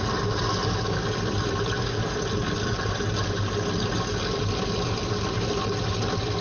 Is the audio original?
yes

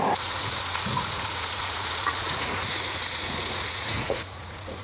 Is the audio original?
no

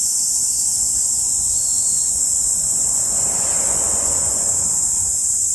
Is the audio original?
no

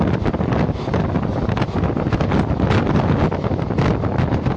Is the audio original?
yes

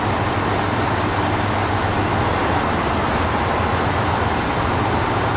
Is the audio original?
yes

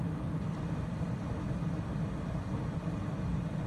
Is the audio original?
yes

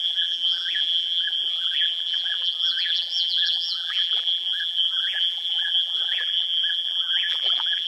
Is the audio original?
no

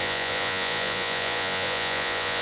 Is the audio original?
no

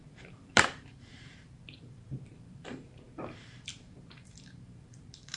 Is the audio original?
no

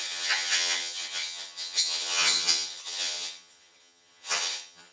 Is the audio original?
no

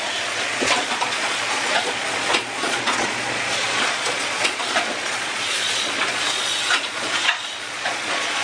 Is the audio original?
no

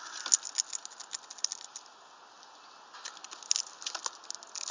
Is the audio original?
yes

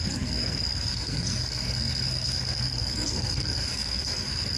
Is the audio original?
no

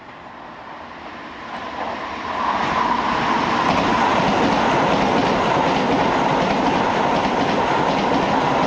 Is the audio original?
yes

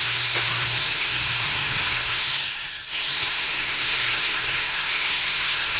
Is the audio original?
no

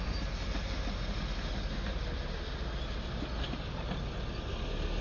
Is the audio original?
yes